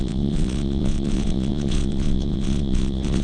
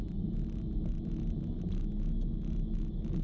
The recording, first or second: second